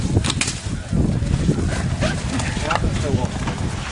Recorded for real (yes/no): yes